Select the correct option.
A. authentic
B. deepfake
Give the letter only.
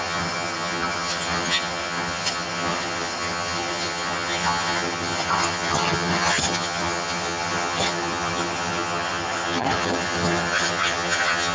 B